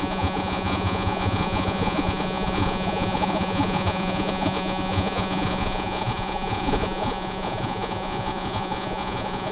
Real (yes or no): no